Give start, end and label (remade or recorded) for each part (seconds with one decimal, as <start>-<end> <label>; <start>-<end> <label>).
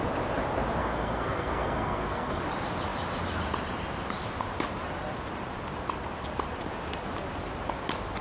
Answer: 0.0-0.8 recorded; 0.8-2.4 remade; 2.4-8.2 recorded